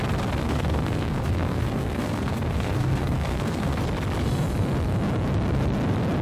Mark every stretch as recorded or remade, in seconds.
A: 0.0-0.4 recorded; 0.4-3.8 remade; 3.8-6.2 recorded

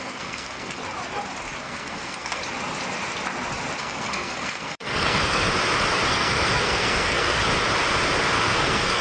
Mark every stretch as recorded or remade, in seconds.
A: 0.0-0.8 remade; 0.8-1.6 recorded; 1.6-2.4 remade; 2.4-3.8 recorded; 3.8-5.5 remade; 5.5-6.1 recorded; 6.1-7.4 remade; 7.4-8.3 recorded; 8.3-9.0 remade

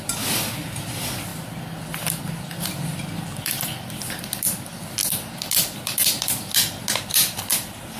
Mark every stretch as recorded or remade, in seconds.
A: 0.0-8.0 recorded

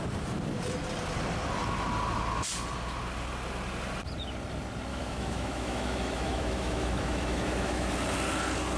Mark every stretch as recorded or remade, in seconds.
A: 0.0-4.9 recorded; 4.9-7.9 remade; 7.9-8.8 recorded

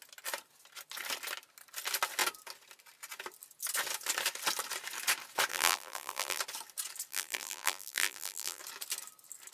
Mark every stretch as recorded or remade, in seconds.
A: 0.0-5.5 recorded; 5.5-6.4 remade; 6.4-7.1 recorded; 7.1-8.6 remade; 8.6-9.5 recorded

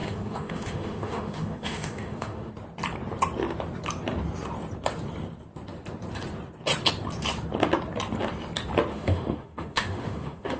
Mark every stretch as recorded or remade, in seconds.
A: 0.0-2.5 remade; 2.5-8.9 recorded; 8.9-10.6 remade

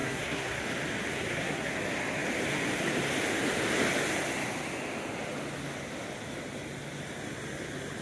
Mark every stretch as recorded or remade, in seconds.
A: 0.0-0.6 remade; 0.6-1.1 recorded; 1.1-1.7 remade; 1.7-8.0 recorded